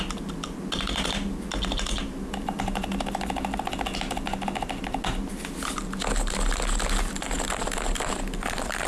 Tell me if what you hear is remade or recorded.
recorded